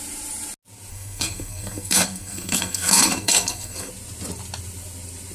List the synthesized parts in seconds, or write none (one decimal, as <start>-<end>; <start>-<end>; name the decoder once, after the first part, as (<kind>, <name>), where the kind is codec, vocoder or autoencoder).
0.9-3.9 (codec, SNAC)